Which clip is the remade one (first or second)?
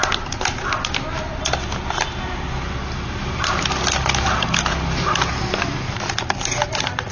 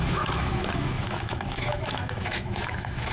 second